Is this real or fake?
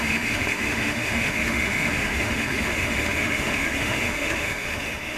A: fake